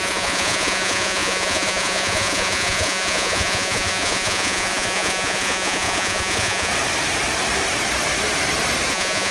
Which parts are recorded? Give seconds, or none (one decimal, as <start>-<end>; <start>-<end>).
6.7-8.9